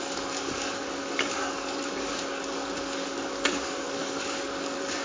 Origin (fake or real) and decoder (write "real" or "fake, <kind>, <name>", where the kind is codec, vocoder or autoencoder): fake, codec, DAC